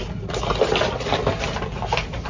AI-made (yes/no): no